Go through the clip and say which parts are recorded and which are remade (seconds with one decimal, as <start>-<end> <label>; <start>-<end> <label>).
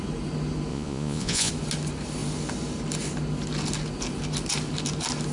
0.0-0.7 recorded; 0.7-1.5 remade; 1.5-5.3 recorded